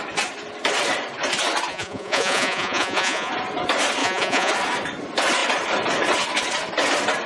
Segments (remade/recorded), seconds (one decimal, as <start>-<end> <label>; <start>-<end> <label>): 0.0-1.7 recorded; 1.7-3.3 remade; 3.3-4.0 recorded; 4.0-4.5 remade; 4.5-7.3 recorded